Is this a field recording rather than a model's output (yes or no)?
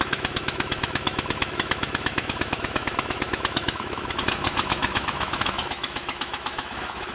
no